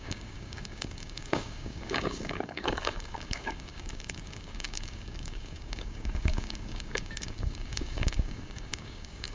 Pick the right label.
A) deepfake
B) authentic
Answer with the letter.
A